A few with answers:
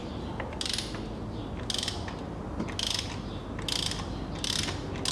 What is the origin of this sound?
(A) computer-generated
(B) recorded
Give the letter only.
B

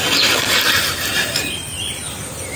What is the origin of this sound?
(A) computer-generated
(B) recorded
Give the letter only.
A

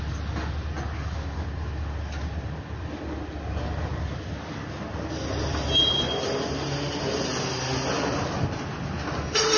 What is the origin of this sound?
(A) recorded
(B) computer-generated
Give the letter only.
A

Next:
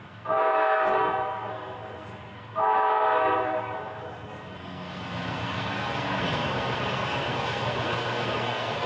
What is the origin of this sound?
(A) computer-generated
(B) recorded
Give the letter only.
A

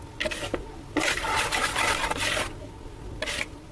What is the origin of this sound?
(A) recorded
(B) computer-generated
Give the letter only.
A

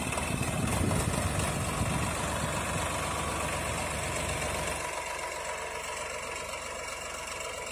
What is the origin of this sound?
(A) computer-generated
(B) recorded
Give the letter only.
B